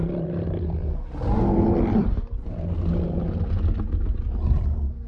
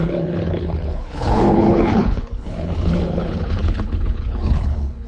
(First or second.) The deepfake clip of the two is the second